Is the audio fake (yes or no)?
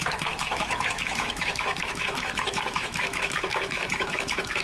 yes